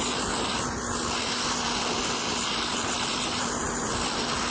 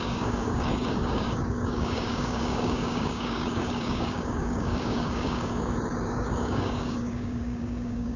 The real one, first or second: first